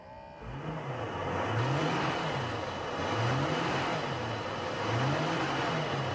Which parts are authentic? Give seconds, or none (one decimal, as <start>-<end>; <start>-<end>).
0.0-6.1